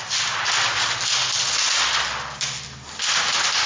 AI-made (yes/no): no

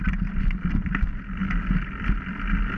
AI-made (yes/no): no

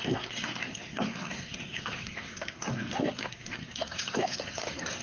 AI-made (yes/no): yes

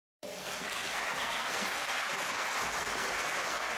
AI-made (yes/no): yes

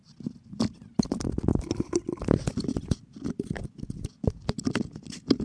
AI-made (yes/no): no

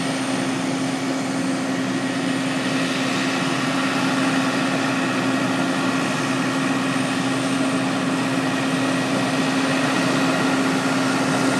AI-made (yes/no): no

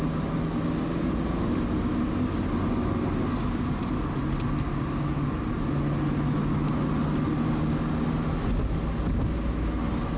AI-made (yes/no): no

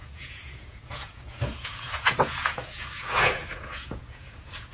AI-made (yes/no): yes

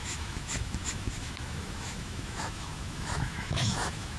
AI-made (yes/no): yes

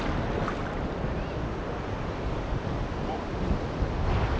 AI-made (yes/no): no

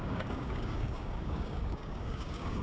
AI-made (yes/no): yes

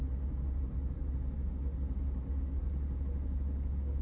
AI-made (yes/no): no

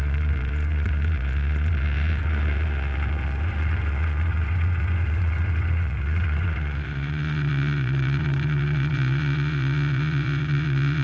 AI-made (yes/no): yes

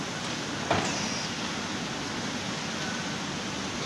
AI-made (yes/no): no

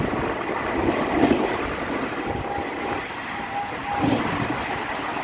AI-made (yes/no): no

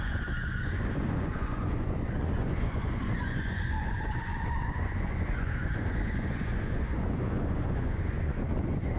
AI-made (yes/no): yes